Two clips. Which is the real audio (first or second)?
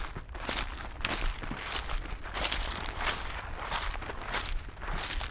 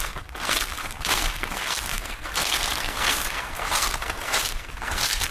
first